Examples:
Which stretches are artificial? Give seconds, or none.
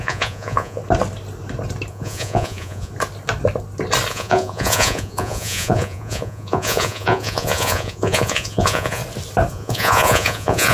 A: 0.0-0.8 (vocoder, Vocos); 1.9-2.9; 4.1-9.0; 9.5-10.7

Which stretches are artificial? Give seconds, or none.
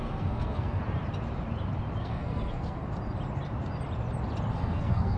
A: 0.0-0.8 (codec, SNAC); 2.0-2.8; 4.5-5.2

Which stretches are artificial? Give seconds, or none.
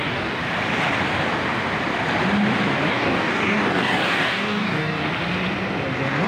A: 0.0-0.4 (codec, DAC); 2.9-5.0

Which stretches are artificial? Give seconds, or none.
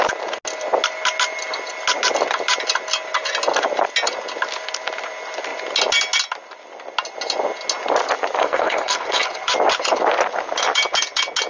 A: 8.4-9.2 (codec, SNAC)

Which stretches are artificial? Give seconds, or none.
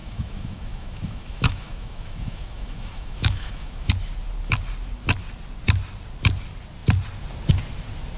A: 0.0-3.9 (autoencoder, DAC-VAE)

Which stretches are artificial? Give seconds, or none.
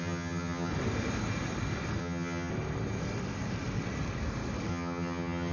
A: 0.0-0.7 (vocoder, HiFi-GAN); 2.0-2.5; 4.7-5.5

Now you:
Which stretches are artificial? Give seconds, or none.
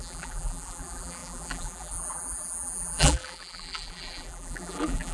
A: 0.0-5.1 (vocoder, BigVGAN v2)